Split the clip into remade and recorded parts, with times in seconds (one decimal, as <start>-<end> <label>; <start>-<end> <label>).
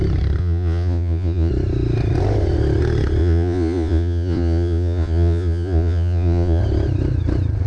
0.0-0.4 recorded; 0.4-1.5 remade; 1.5-3.2 recorded; 3.2-6.6 remade; 6.6-7.7 recorded